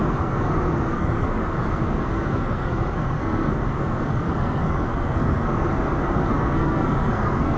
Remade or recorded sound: remade